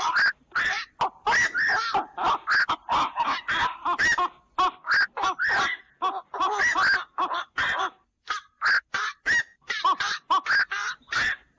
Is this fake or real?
real